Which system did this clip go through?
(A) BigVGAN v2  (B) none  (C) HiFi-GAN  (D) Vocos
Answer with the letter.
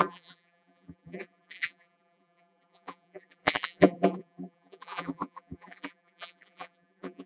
A